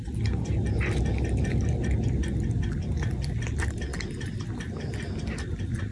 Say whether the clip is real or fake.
real